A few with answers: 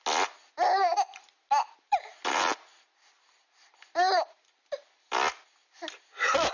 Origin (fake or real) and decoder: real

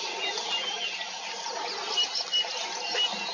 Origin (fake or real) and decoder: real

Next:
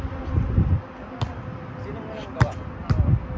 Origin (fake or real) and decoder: real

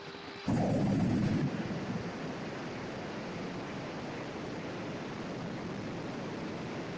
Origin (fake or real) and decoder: real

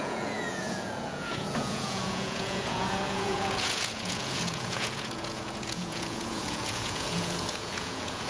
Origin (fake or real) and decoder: fake, vocoder, Vocos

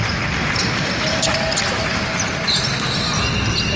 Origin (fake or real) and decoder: real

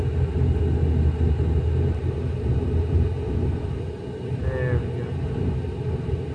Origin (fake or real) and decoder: real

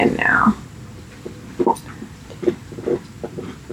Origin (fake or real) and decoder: real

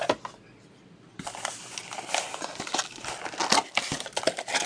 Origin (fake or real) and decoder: real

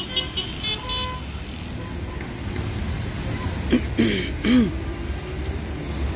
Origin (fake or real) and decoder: real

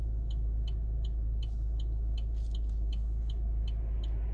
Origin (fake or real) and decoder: real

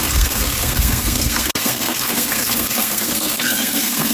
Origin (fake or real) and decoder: fake, codec, SNAC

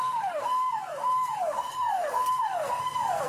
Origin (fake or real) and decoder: fake, codec, SNAC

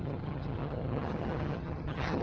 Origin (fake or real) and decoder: fake, vocoder, HiFi-GAN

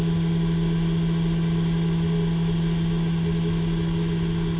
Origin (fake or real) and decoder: real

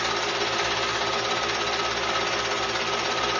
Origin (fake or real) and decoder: real